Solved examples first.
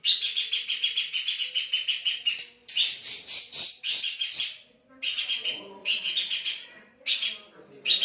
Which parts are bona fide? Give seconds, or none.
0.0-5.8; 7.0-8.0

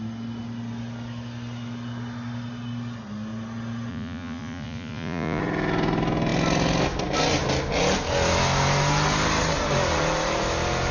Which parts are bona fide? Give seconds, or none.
0.0-3.9; 5.4-10.9

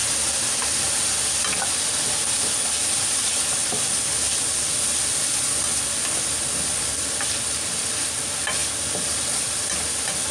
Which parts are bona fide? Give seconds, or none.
0.0-10.3

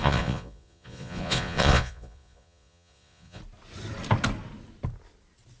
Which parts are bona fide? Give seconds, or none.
3.4-5.6

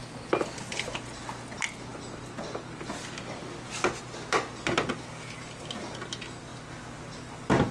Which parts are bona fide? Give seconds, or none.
0.0-7.7

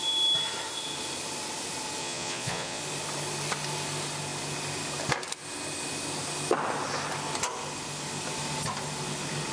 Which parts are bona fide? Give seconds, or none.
0.0-2.0; 2.8-9.5

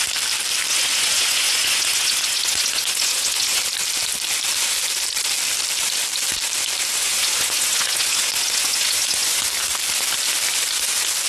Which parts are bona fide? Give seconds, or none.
0.0-0.7; 3.6-7.0; 9.4-11.3

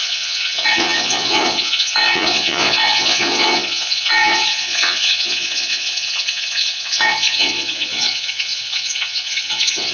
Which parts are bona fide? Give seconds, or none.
none